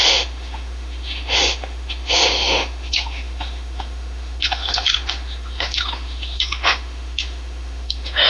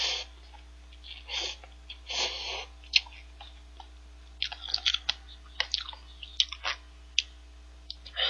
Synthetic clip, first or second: first